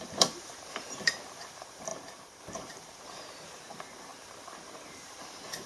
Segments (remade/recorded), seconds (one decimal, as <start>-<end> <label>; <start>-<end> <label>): 0.0-5.7 remade